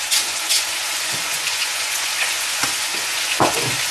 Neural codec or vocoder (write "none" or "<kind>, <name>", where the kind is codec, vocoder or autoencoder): vocoder, Vocos